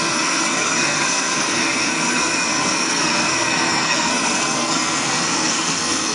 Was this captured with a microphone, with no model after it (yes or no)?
no